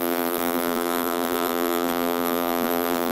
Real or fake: fake